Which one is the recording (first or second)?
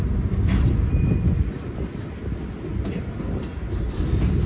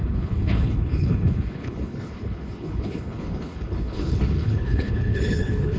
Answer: first